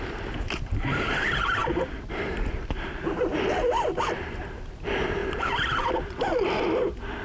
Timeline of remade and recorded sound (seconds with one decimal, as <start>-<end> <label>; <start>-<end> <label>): 0.0-7.2 recorded